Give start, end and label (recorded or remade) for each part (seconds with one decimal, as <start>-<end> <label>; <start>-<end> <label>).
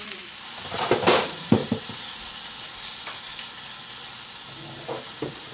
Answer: 0.0-1.6 remade; 1.6-4.9 recorded; 4.9-5.5 remade